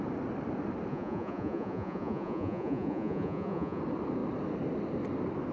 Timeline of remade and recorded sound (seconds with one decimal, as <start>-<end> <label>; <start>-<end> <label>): 0.0-0.9 recorded; 0.9-3.8 remade; 3.8-5.5 recorded